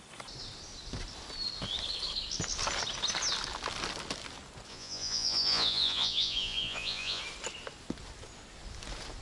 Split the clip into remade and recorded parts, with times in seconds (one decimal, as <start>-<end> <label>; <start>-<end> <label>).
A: 0.0-4.7 recorded; 4.7-7.2 remade; 7.2-9.2 recorded